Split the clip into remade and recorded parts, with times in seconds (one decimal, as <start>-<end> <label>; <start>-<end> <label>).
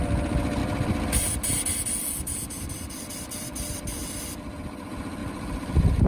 0.0-6.1 remade